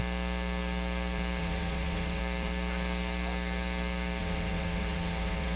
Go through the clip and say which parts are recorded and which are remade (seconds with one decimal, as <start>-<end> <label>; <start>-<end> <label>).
0.0-1.4 recorded; 1.4-2.2 remade; 2.2-4.2 recorded; 4.2-5.6 remade